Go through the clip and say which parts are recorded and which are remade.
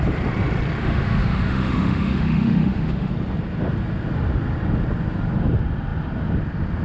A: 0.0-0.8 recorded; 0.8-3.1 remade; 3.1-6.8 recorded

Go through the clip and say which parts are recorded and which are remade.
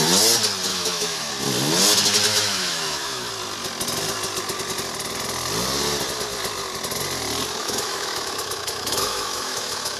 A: 0.0-0.7 recorded; 0.7-1.3 remade; 1.3-2.3 recorded; 2.3-3.3 remade; 3.3-7.6 recorded; 7.6-10.0 remade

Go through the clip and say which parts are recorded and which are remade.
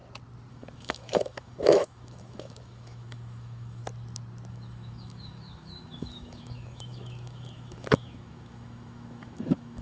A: 0.0-0.5 recorded; 0.5-3.8 remade; 3.8-4.5 recorded; 4.5-9.8 remade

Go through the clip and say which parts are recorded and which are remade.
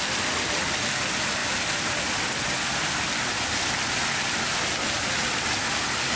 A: 0.0-6.2 recorded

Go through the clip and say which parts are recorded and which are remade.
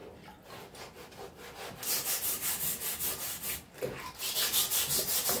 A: 0.0-5.4 recorded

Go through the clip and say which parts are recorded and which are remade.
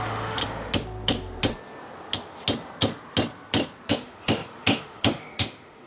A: 0.0-0.4 remade; 0.4-3.9 recorded; 3.9-5.9 remade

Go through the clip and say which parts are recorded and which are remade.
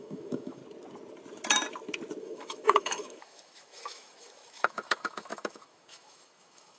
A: 0.0-0.6 remade; 0.6-2.2 recorded; 2.2-6.8 remade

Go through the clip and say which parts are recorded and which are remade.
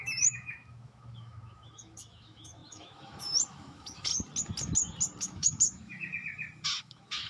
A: 0.0-4.1 remade; 4.1-5.2 recorded; 5.2-6.1 remade; 6.1-6.8 recorded; 6.8-7.3 remade